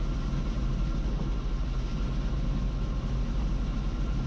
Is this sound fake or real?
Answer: real